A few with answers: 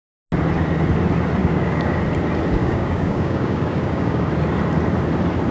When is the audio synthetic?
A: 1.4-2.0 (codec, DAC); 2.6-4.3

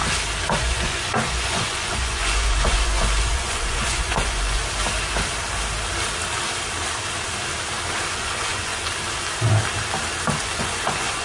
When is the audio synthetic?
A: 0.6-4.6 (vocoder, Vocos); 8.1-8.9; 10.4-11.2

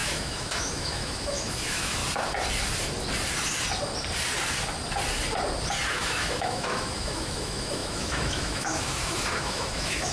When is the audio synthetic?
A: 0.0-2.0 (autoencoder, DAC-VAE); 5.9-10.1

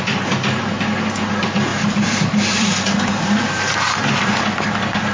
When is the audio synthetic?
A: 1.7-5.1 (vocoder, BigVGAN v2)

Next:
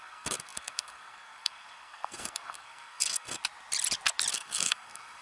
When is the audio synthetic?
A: 0.0-3.4 (codec, SNAC); 4.3-5.2